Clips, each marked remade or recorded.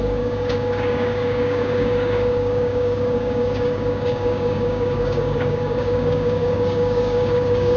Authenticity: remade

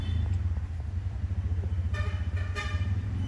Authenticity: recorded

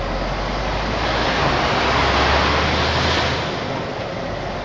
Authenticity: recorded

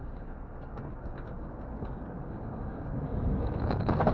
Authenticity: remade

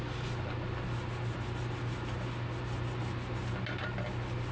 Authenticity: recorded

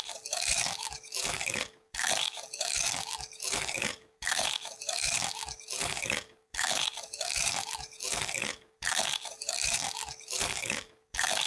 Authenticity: remade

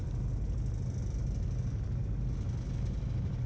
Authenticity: recorded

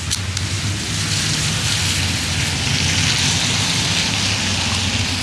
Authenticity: recorded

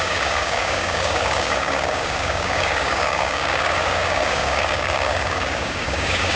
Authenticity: remade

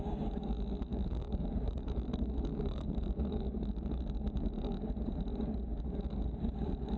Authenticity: remade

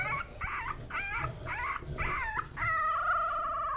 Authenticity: recorded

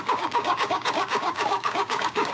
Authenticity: remade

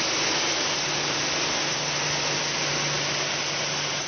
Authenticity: recorded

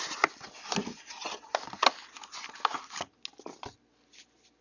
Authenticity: recorded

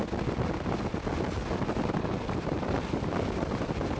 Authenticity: recorded